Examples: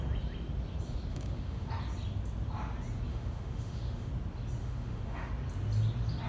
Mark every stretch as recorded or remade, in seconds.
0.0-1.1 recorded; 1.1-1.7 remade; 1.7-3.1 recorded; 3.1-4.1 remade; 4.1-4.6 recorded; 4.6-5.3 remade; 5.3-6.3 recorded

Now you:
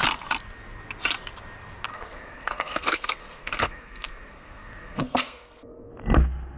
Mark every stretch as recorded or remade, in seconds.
0.0-1.9 recorded; 1.9-5.9 remade; 5.9-6.6 recorded